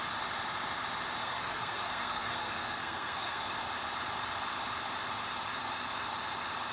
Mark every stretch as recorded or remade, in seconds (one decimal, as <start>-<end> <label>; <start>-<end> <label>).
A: 0.0-1.2 recorded; 1.2-3.4 remade; 3.4-6.7 recorded

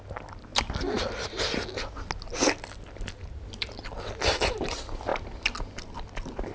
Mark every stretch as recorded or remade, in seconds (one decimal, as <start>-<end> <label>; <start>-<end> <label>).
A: 0.0-6.5 recorded

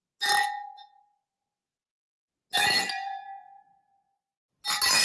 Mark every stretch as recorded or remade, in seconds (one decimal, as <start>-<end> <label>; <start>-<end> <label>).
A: 0.0-5.0 recorded

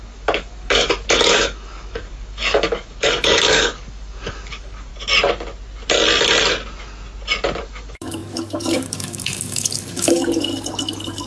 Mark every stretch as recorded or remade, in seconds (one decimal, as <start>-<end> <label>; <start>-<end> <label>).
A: 0.0-4.9 remade; 4.9-7.6 recorded; 7.6-11.3 remade